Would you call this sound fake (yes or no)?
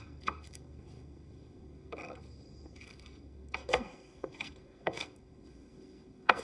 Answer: yes